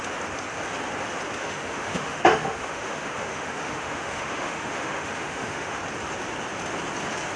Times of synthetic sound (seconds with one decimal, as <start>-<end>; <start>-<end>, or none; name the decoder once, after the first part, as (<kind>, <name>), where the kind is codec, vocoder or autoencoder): 1.4-5.8 (autoencoder, DAC-VAE)